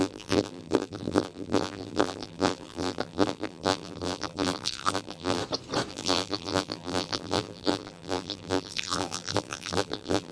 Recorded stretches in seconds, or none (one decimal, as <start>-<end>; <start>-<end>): 5.4-5.9